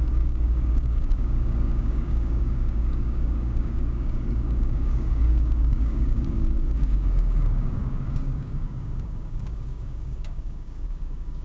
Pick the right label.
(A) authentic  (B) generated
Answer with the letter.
B